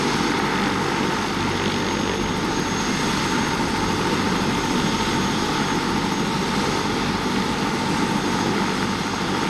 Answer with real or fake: real